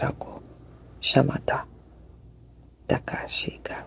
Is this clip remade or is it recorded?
recorded